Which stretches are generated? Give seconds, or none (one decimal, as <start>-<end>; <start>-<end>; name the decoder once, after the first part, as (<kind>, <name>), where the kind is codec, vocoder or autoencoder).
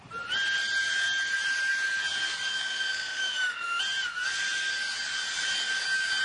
2.5-3.8 (autoencoder, DAC-VAE)